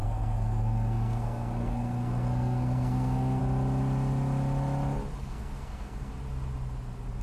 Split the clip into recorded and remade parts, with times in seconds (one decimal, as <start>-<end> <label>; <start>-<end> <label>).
0.0-3.4 remade; 3.4-5.2 recorded; 5.2-6.1 remade; 6.1-7.2 recorded